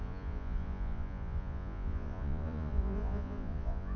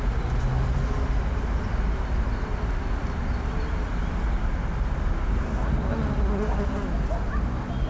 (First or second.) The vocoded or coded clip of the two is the first